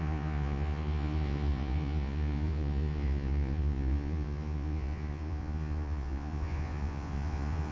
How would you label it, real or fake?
fake